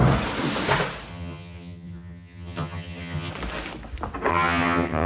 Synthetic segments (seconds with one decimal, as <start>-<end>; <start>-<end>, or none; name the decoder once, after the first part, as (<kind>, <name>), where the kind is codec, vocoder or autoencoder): 1.1-3.3 (vocoder, HiFi-GAN); 4.3-5.1